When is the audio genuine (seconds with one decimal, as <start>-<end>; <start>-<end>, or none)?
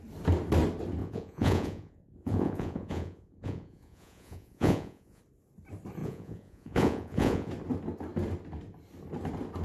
0.0-1.0; 5.2-6.0; 7.5-9.6